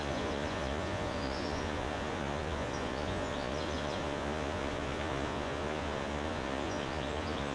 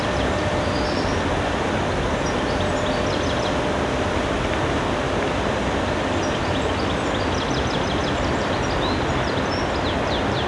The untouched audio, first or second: second